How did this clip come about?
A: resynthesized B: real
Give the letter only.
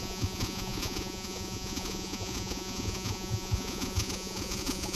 A